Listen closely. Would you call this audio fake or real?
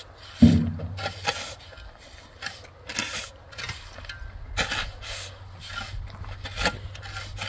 real